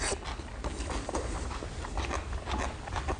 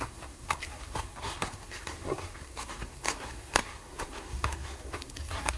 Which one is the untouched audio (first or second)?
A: first